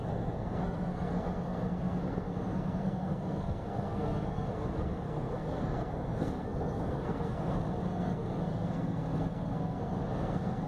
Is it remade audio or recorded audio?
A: remade